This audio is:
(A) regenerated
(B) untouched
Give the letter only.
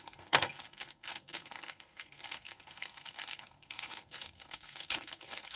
A